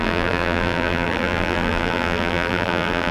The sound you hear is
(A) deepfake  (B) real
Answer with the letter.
A